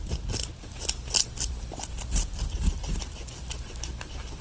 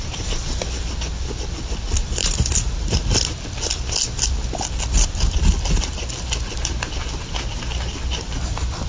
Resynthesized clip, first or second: second